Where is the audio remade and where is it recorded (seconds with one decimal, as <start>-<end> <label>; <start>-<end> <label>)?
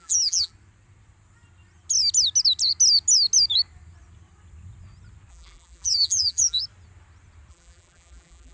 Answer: 0.0-0.5 remade; 0.5-5.3 recorded; 5.3-6.6 remade; 6.6-7.5 recorded; 7.5-8.5 remade